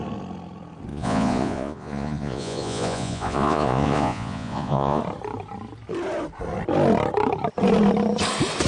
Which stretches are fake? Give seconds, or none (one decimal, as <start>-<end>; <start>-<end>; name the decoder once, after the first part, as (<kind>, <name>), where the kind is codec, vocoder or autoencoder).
0.9-5.0 (vocoder, Vocos)